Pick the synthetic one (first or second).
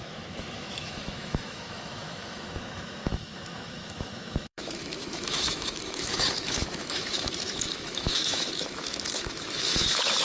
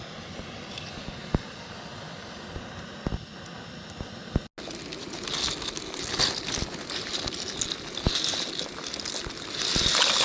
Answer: first